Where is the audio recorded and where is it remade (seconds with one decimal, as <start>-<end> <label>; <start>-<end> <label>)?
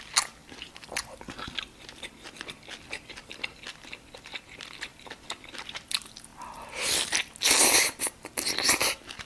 0.0-6.3 remade; 6.3-7.6 recorded; 7.6-9.3 remade